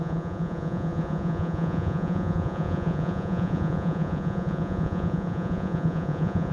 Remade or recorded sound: remade